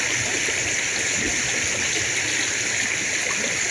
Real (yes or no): yes